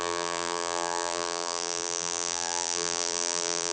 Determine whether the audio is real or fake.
fake